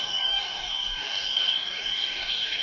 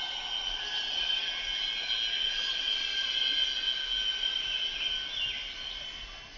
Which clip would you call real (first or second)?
second